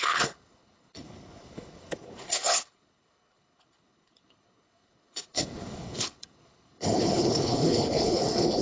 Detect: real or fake fake